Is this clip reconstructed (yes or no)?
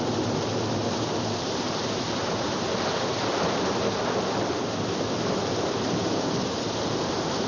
no